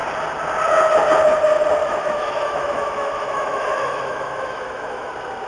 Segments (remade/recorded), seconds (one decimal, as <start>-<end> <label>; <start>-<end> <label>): 0.0-1.8 recorded; 1.8-5.1 remade; 5.1-5.5 recorded